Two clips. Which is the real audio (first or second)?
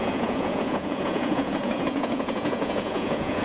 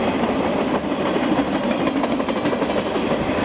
second